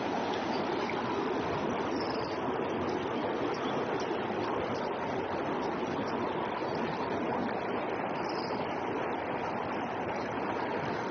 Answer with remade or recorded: recorded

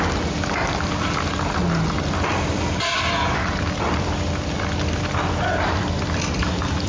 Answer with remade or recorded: recorded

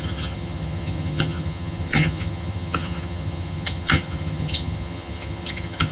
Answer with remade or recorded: remade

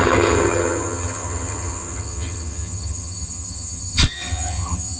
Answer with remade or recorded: remade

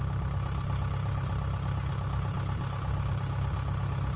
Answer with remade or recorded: recorded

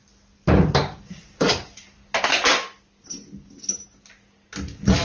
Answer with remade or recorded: recorded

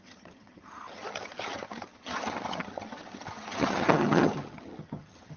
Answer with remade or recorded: remade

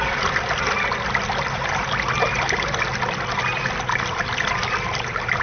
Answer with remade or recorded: recorded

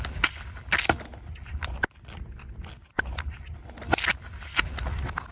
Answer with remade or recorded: recorded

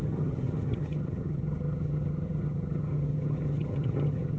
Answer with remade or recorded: remade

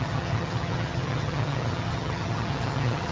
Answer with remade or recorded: remade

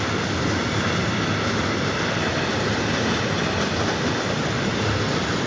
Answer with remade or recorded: recorded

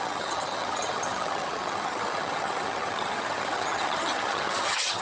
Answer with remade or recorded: remade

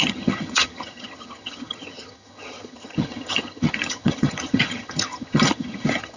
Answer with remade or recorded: remade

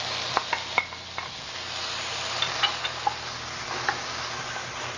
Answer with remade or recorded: recorded